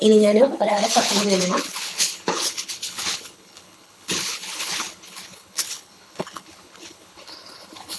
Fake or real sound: fake